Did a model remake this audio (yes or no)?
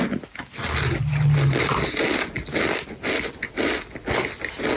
no